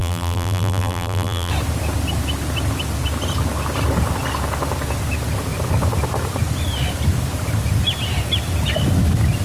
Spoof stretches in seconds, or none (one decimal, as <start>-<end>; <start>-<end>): 0.0-1.5